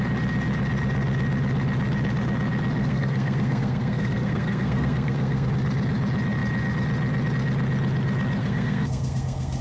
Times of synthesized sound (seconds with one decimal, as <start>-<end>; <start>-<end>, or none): 2.8-5.5; 8.4-9.6